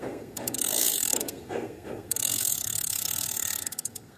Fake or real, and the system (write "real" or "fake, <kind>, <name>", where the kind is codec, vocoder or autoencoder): fake, codec, SNAC